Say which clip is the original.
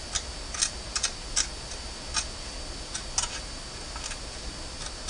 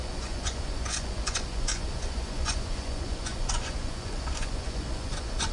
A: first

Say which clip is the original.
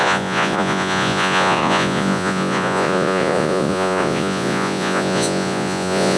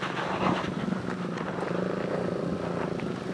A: second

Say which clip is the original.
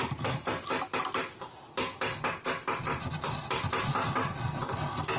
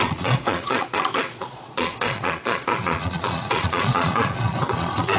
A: first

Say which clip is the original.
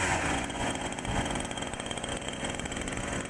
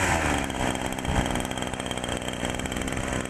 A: second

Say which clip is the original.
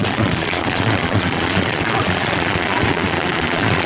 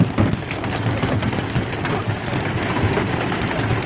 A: second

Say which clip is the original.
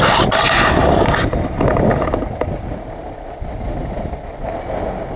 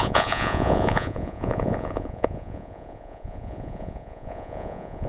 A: first